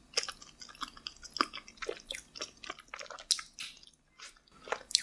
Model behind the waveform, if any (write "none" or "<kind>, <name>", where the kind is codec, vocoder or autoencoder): none